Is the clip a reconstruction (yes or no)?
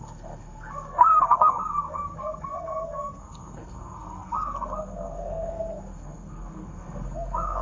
yes